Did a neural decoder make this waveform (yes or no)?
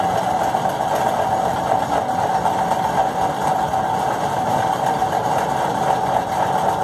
no